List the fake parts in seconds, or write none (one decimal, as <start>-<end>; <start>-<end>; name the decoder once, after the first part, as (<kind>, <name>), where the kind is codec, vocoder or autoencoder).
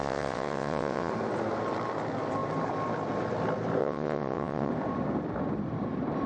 0.0-1.1 (vocoder, WaveNeXt); 3.8-4.7